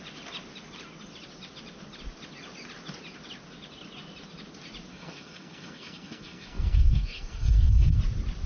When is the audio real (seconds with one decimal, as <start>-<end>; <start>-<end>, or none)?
0.0-4.9; 8.0-8.5